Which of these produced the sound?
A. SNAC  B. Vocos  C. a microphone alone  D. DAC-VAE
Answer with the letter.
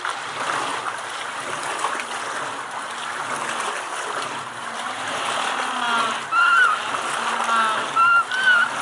C